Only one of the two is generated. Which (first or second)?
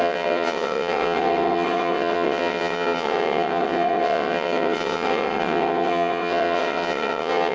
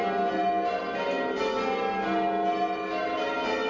first